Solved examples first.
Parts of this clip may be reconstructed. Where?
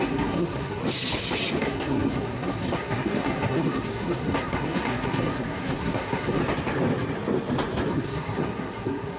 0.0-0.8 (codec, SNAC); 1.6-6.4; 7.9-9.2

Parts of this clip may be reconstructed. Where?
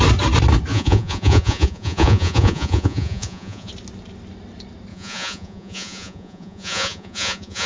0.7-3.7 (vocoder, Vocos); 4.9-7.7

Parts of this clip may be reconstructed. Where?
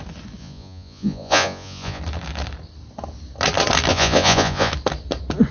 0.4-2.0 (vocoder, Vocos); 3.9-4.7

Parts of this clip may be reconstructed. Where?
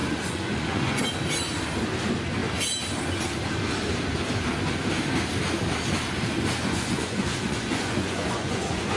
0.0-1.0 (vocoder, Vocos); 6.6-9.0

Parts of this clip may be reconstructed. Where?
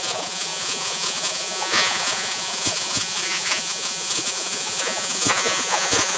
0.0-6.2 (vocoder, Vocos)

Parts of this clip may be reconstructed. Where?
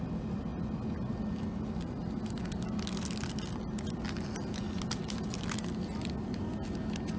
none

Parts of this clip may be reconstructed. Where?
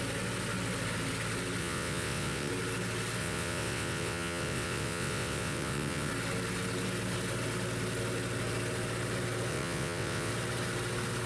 1.6-2.5 (vocoder, WaveNeXt); 3.2-6.1; 9.5-10.3